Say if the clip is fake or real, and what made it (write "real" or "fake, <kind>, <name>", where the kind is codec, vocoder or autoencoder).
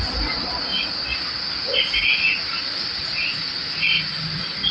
real